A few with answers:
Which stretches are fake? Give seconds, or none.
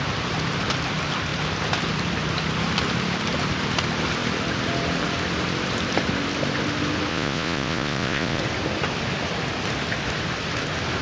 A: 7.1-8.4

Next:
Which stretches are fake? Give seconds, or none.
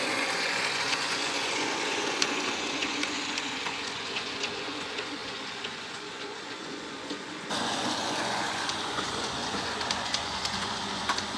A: 0.0-11.4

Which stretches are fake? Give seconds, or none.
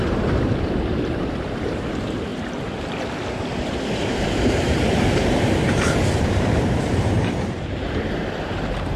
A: 0.0-2.3; 4.1-9.0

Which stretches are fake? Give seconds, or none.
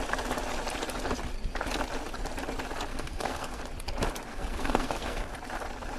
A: 2.9-3.6; 4.3-5.3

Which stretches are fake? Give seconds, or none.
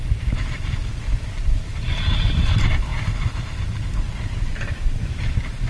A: 0.0-0.8; 1.4-5.7